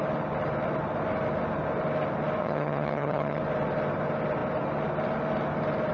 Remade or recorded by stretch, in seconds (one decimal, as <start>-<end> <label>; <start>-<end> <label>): 0.0-2.4 recorded; 2.4-3.4 remade; 3.4-5.9 recorded